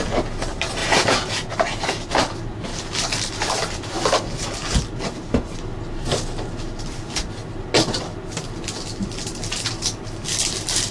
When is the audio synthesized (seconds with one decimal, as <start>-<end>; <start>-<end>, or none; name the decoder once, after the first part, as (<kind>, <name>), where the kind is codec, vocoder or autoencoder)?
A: 0.8-1.5 (vocoder, Vocos)